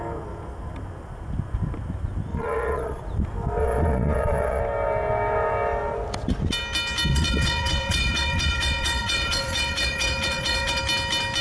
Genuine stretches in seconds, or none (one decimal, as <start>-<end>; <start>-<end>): 0.0-2.3; 3.0-3.6; 4.6-7.1; 10.8-11.4